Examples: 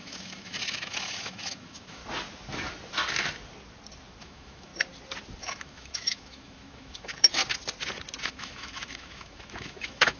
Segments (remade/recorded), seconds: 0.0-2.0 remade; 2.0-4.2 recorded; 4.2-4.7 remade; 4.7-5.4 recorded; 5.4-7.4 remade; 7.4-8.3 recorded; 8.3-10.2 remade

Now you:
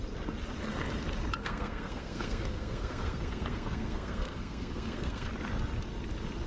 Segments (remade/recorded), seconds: 0.0-1.4 recorded; 1.4-5.3 remade; 5.3-6.5 recorded

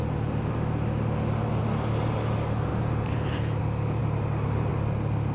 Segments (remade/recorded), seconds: 0.0-2.7 recorded; 2.7-3.6 remade; 3.6-4.0 recorded; 4.0-4.7 remade; 4.7-5.3 recorded

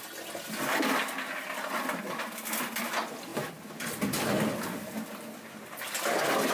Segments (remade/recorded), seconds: 0.0-6.5 recorded

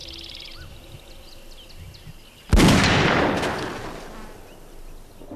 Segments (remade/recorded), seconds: 0.0-5.4 recorded